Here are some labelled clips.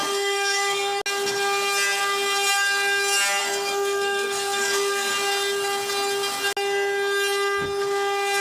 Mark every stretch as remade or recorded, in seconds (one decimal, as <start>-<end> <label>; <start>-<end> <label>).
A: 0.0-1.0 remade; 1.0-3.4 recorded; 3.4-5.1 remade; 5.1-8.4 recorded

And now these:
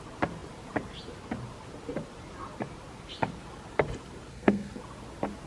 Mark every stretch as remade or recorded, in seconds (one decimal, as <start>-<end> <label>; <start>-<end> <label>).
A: 0.0-4.3 recorded; 4.3-4.8 remade; 4.8-5.5 recorded

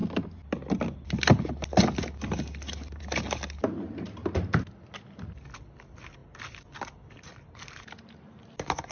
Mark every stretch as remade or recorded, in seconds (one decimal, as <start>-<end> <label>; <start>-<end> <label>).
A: 0.0-8.9 recorded

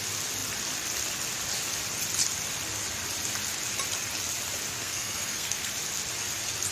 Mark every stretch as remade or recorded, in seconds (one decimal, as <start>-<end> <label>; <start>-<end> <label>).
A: 0.0-4.8 recorded; 4.8-5.7 remade; 5.7-6.7 recorded

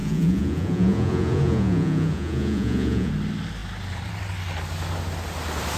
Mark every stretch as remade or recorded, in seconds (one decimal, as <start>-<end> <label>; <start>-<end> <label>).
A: 0.0-3.1 remade; 3.1-5.8 recorded

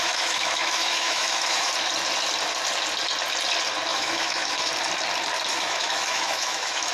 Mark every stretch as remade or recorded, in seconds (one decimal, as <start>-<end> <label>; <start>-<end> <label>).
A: 0.0-1.7 remade; 1.7-3.9 recorded; 3.9-4.7 remade; 4.7-5.5 recorded; 5.5-6.9 remade